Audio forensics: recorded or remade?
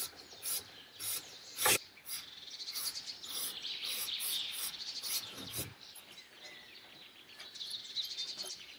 recorded